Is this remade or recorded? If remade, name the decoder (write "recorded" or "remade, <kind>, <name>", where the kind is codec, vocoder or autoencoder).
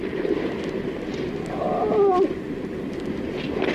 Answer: recorded